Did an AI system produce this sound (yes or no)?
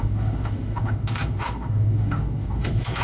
yes